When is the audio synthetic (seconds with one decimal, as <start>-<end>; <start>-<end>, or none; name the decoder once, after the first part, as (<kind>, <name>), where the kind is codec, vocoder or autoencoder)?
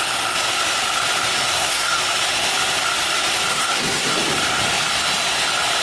1.5-2.0 (codec, SNAC); 3.5-4.1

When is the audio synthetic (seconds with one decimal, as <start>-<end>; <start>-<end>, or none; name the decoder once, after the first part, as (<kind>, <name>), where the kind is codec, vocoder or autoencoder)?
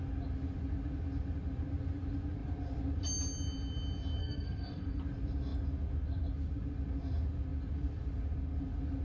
4.2-5.0 (codec, SNAC)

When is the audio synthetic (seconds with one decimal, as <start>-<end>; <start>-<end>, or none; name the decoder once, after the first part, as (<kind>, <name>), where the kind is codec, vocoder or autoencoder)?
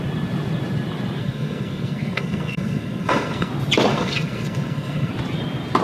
1.2-3.5 (codec, SNAC); 3.9-5.1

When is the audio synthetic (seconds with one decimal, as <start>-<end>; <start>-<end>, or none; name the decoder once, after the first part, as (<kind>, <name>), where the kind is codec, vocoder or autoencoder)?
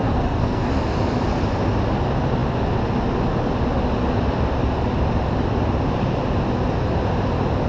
0.0-0.6 (codec, SNAC)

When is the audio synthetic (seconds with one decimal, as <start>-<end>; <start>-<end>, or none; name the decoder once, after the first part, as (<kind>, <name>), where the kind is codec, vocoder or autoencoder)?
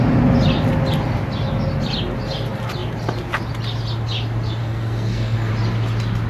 4.6-5.5 (codec, SNAC)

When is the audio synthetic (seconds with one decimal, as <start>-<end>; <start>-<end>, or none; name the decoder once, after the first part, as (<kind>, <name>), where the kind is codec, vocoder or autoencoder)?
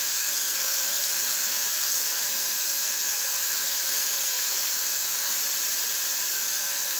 0.0-5.4 (codec, SNAC); 6.3-7.0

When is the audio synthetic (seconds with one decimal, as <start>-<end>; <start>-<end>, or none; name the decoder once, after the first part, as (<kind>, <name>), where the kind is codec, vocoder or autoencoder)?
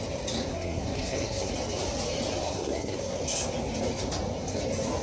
0.5-1.5 (codec, SNAC); 2.4-3.2